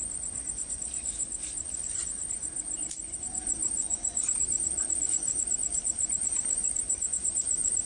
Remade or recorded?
remade